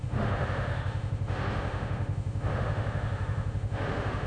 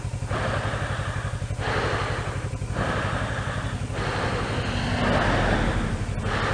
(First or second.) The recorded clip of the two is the second